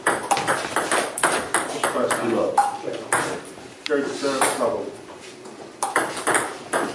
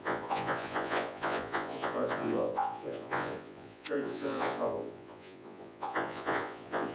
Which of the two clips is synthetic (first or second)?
second